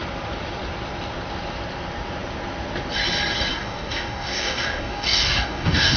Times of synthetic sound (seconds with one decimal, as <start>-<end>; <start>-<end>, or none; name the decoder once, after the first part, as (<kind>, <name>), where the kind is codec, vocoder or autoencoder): 3.5-6.0 (codec, DAC)

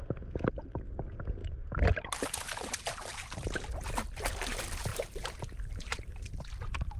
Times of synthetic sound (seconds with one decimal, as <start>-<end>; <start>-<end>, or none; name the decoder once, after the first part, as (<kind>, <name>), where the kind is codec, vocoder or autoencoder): 1.4-3.5 (vocoder, BigVGAN v2); 4.9-6.2

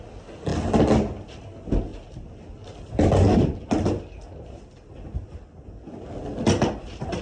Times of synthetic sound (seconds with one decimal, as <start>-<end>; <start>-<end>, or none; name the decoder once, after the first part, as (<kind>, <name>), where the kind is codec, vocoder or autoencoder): none